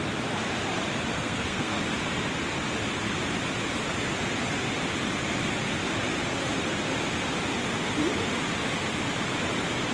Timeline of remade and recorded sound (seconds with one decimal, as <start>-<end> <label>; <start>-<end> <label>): 0.0-1.1 recorded; 1.1-1.8 remade; 1.8-9.9 recorded